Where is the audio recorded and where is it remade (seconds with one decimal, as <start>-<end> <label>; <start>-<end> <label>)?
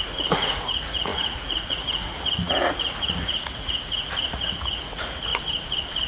0.0-5.3 remade; 5.3-6.1 recorded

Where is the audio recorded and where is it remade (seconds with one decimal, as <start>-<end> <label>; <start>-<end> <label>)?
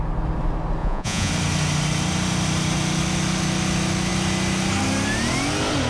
0.0-0.8 recorded; 0.8-1.3 remade; 1.3-5.9 recorded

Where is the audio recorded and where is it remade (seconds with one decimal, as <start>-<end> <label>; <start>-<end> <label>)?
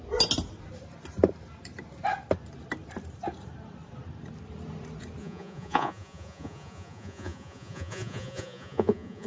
0.0-5.2 recorded; 5.2-9.3 remade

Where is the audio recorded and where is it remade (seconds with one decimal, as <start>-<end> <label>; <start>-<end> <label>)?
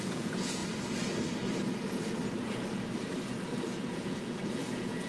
0.0-0.6 remade; 0.6-3.7 recorded; 3.7-5.1 remade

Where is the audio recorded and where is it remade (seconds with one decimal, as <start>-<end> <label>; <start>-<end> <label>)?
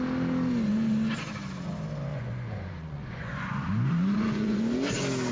0.0-2.1 recorded; 2.1-4.6 remade; 4.6-5.3 recorded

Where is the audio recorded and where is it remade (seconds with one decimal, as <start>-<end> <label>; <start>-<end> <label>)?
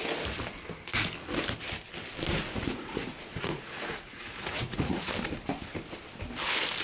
0.0-2.4 recorded; 2.4-5.1 remade; 5.1-6.8 recorded